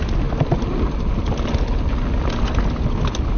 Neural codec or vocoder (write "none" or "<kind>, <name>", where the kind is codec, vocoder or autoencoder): none